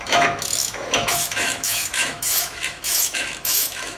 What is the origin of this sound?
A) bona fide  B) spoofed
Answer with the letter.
B